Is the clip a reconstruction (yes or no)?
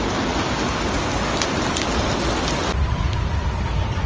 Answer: no